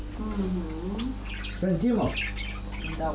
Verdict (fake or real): real